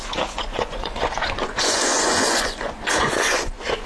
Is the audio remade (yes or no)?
yes